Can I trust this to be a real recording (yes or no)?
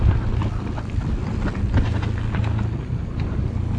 yes